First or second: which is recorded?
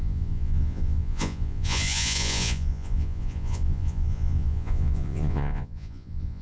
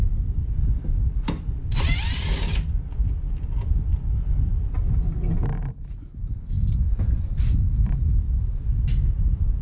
second